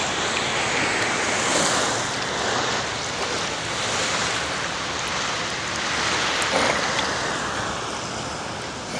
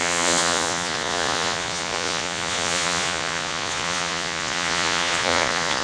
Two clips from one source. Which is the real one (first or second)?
first